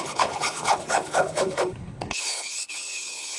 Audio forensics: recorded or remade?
remade